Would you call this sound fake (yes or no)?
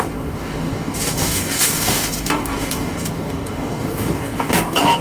yes